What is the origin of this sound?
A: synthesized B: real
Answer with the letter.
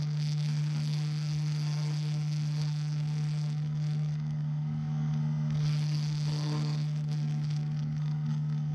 A